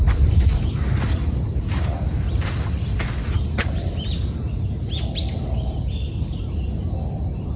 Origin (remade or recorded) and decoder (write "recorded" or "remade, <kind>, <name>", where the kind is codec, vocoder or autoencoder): recorded